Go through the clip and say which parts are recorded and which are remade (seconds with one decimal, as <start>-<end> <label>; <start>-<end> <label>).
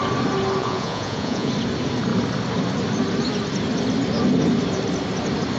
0.0-0.6 recorded; 0.6-1.5 remade; 1.5-5.6 recorded